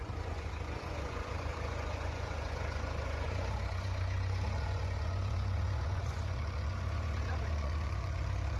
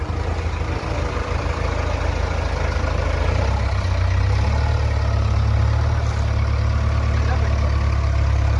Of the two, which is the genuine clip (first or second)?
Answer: second